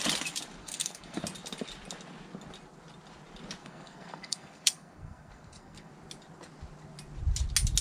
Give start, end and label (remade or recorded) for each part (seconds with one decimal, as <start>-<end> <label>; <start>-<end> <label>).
0.0-0.6 recorded; 0.6-1.2 remade; 1.2-3.6 recorded; 3.6-5.9 remade; 5.9-7.8 recorded